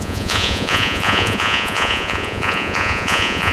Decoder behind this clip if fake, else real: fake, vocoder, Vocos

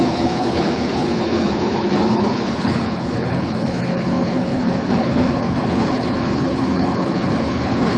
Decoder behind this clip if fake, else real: fake, codec, HILCodec